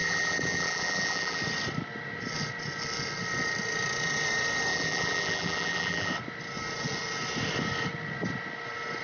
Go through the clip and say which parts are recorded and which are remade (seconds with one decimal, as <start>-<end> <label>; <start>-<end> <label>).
0.0-1.4 remade; 1.4-4.7 recorded; 4.7-6.1 remade; 6.1-9.0 recorded